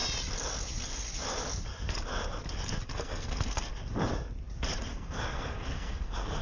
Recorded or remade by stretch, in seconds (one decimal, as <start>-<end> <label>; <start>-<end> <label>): 0.0-2.9 recorded; 2.9-3.6 remade; 3.6-4.9 recorded; 4.9-6.4 remade